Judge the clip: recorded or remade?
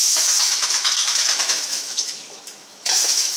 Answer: remade